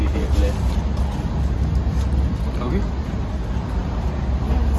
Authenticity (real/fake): real